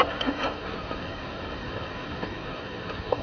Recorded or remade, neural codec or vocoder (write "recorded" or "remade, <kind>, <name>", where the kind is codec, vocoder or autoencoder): remade, codec, SNAC